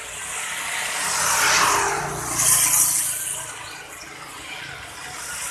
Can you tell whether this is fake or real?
real